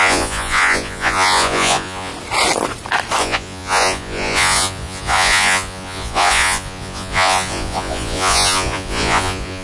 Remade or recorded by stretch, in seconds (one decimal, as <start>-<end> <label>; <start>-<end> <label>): 0.0-2.1 remade; 2.1-3.2 recorded; 3.2-9.6 remade